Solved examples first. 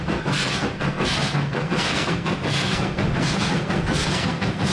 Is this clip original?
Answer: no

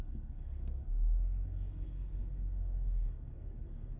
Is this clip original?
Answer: no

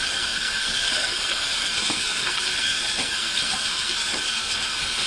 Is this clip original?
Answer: no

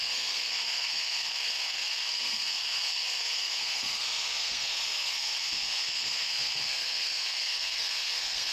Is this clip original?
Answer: no